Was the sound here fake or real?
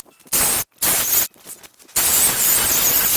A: real